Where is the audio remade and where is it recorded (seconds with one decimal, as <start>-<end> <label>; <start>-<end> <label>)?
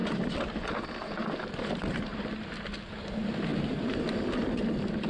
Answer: 0.0-1.7 recorded; 1.7-2.1 remade; 2.1-2.8 recorded; 2.8-5.1 remade